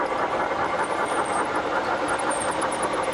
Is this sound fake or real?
fake